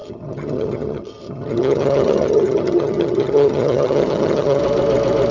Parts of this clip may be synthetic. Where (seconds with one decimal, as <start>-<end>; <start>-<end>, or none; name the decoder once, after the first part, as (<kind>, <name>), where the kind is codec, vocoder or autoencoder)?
0.0-4.6 (vocoder, HiFi-GAN)